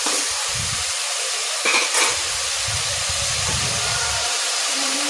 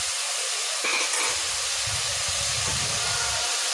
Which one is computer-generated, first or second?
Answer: first